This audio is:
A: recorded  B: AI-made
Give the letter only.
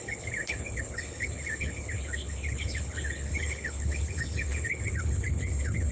B